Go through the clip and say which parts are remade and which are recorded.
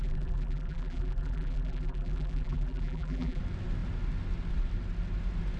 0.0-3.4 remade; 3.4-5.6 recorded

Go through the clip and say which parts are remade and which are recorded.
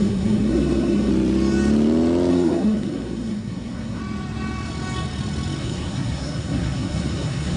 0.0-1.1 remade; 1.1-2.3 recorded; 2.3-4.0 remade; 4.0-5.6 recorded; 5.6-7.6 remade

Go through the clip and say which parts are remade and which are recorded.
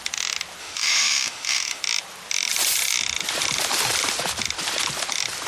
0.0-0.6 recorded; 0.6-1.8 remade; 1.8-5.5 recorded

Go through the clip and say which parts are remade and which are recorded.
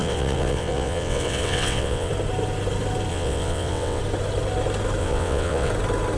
0.0-2.1 remade; 2.1-3.1 recorded; 3.1-4.0 remade; 4.0-5.0 recorded; 5.0-5.7 remade; 5.7-6.2 recorded